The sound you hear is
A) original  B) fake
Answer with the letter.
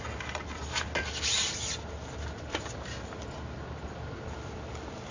A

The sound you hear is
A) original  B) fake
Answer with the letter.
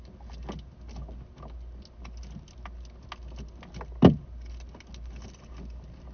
A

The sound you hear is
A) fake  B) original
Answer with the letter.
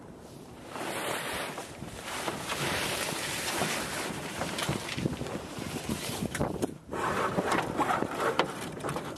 A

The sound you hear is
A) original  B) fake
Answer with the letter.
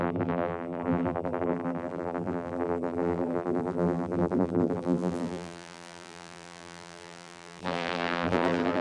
B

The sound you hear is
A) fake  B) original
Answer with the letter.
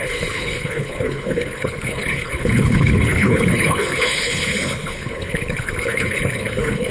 A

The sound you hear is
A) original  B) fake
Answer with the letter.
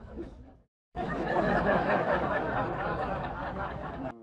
B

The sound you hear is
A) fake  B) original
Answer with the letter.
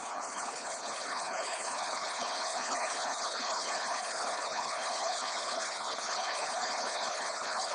A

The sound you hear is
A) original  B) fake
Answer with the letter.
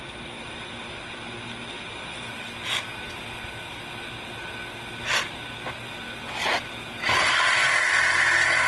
A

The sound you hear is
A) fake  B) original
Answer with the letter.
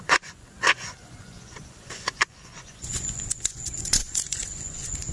A